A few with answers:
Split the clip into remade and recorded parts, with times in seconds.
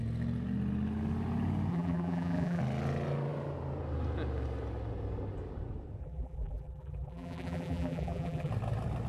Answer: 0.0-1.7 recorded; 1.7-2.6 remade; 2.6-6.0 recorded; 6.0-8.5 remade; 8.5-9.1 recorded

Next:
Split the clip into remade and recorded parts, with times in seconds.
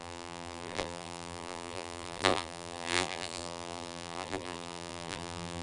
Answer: 0.0-5.6 remade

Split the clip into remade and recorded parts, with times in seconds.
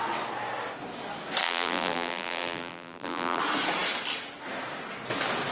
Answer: 0.0-1.4 recorded; 1.4-3.4 remade; 3.4-5.5 recorded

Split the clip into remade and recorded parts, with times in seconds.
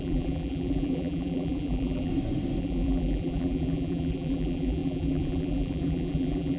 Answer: 0.0-2.1 remade; 2.1-2.6 recorded; 2.6-6.6 remade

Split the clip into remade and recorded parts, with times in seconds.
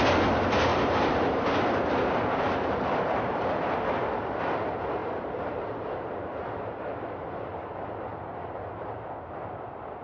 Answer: 0.0-0.7 recorded; 0.7-1.3 remade; 1.3-5.0 recorded; 5.0-6.8 remade; 6.8-8.1 recorded; 8.1-8.9 remade; 8.9-10.0 recorded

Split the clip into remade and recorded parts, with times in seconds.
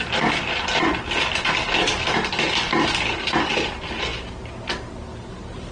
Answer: 0.0-5.7 recorded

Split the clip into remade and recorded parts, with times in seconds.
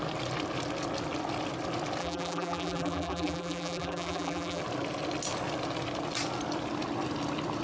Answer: 0.0-2.0 recorded; 2.0-4.6 remade; 4.6-7.6 recorded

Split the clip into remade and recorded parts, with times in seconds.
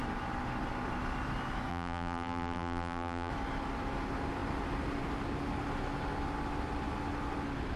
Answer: 0.0-1.7 recorded; 1.7-3.3 remade; 3.3-7.8 recorded